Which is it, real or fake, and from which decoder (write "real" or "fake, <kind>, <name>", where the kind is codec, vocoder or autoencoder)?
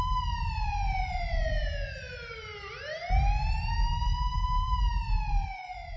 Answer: fake, vocoder, BigVGAN v2